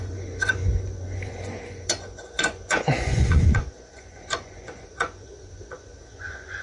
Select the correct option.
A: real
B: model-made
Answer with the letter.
B